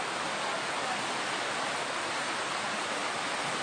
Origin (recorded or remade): recorded